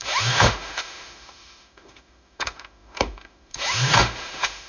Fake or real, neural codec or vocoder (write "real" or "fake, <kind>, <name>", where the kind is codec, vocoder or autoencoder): fake, autoencoder, DAC-VAE